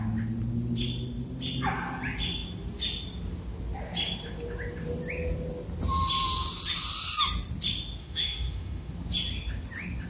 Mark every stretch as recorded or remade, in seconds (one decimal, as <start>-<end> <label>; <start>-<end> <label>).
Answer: 0.0-8.0 recorded; 8.0-8.9 remade; 8.9-10.1 recorded